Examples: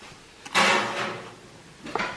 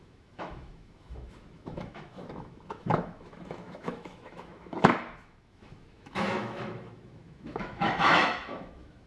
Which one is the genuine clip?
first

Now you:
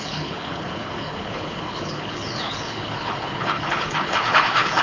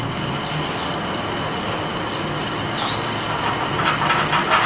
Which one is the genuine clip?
second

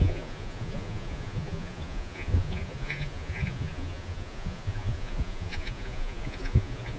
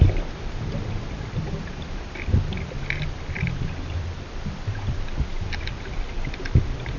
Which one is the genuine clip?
second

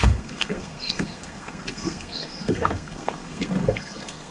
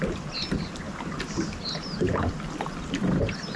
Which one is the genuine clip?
second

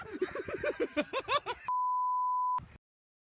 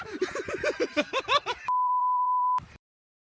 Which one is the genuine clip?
first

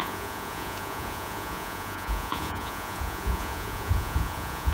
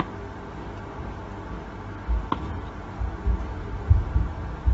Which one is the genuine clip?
second